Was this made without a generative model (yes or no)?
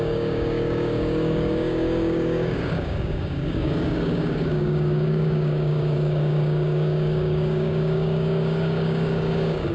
no